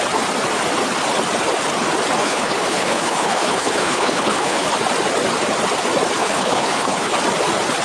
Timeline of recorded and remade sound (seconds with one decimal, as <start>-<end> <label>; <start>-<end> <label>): 0.0-2.2 recorded; 2.2-4.7 remade; 4.7-6.2 recorded; 6.2-7.1 remade; 7.1-7.8 recorded